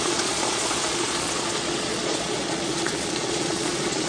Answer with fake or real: fake